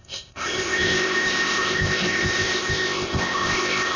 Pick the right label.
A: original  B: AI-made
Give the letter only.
B